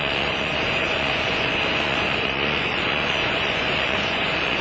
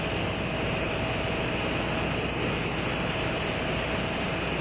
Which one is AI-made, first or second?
first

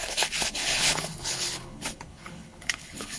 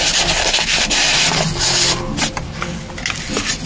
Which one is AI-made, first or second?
first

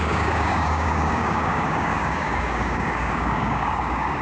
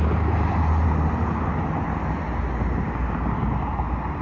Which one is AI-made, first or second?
first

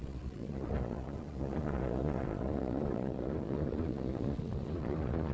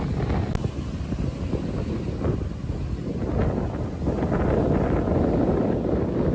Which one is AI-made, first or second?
first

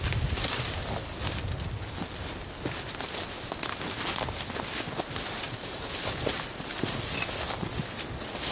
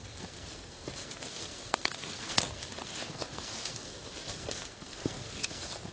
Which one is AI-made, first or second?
second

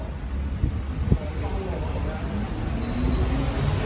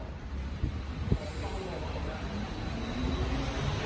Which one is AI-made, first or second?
second